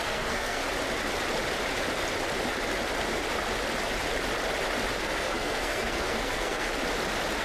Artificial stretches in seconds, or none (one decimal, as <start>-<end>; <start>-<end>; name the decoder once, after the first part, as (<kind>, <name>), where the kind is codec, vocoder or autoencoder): 0.0-0.6 (codec, SNAC); 5.0-6.7